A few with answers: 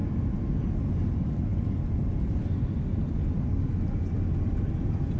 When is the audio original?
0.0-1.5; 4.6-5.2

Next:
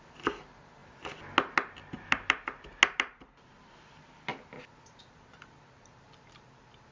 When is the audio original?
0.8-3.0; 4.3-5.0

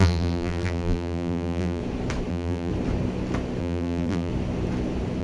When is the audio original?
1.8-2.3; 2.7-3.6; 4.3-5.2

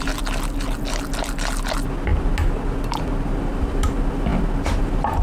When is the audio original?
0.0-5.2

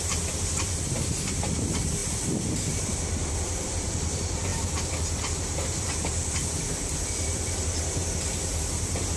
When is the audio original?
none

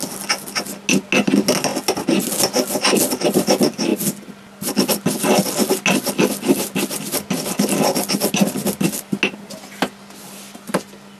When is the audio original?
0.0-11.2

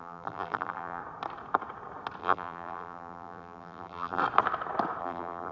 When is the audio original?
1.0-2.2; 4.2-5.0

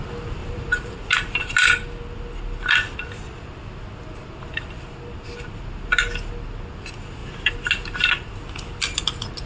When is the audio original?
0.0-0.4; 1.6-9.5